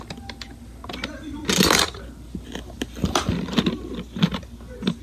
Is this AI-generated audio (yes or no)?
no